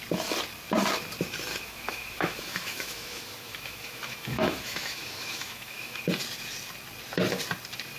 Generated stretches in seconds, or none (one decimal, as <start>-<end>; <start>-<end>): 1.5-6.0